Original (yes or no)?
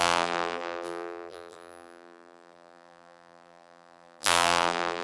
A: no